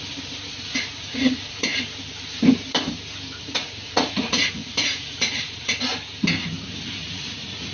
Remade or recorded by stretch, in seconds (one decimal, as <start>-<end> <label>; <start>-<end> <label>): 0.0-1.7 remade; 1.7-3.4 recorded; 3.4-5.9 remade; 5.9-7.1 recorded; 7.1-7.7 remade